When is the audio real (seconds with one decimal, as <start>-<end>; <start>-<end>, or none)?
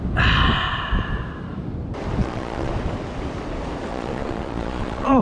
0.0-2.2; 2.7-3.9